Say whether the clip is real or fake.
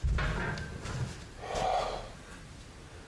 real